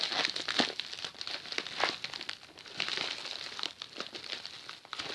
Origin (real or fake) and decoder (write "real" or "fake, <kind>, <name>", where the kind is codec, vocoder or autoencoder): real